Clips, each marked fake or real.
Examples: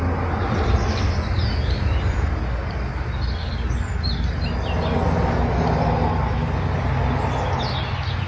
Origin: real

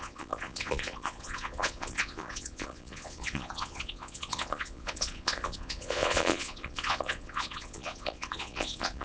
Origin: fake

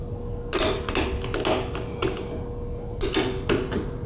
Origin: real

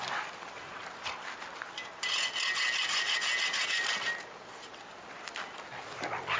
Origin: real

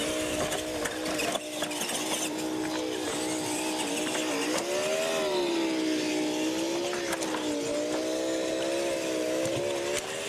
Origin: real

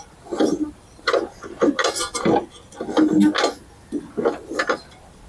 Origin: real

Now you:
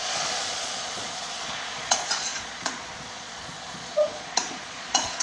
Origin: fake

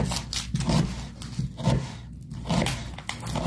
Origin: real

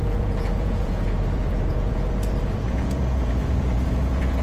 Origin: fake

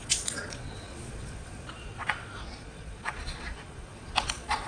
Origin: fake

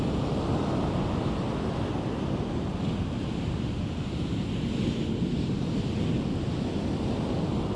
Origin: real